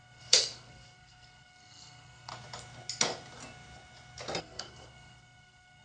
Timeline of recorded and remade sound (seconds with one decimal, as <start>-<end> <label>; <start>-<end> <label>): 0.0-2.3 remade; 2.3-4.4 recorded; 4.4-5.8 remade